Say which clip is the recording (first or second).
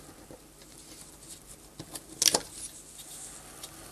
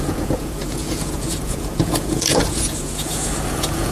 first